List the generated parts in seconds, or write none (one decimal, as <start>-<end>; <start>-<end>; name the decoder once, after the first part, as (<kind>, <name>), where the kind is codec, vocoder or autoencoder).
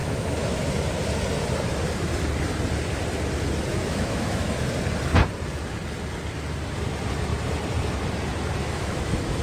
0.0-0.6 (autoencoder, DAC-VAE); 3.7-4.6; 8.6-9.4